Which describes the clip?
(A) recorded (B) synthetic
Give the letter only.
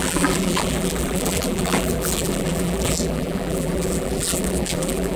B